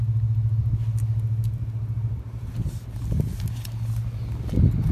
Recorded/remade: recorded